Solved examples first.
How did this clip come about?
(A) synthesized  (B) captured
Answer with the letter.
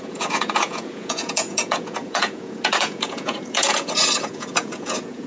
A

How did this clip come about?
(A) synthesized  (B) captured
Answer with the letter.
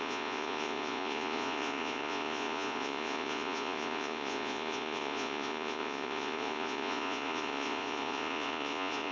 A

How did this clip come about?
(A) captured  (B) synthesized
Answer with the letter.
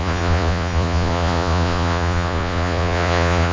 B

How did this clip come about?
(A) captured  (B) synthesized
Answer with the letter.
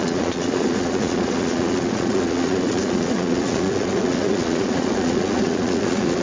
B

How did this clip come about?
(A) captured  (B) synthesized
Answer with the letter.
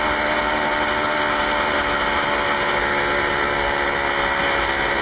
A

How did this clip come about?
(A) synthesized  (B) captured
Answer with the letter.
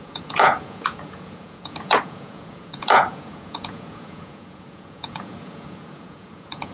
A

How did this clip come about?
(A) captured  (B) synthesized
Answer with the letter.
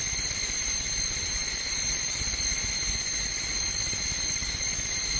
A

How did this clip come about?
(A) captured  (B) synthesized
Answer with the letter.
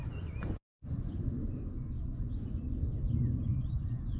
B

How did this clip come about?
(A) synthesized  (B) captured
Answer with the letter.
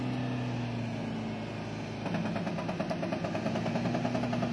B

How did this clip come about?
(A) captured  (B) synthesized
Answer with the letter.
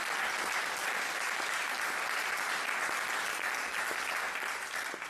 A